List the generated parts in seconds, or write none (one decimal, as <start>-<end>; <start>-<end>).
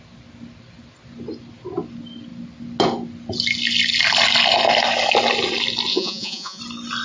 5.9-6.6